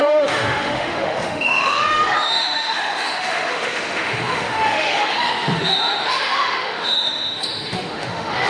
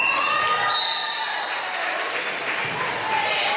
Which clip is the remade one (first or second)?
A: first